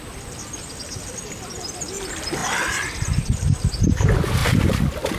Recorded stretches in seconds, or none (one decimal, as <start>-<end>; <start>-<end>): 0.0-5.2

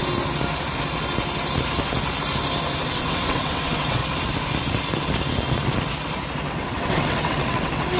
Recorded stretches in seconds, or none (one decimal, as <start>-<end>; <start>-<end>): 0.0-2.8; 4.0-6.5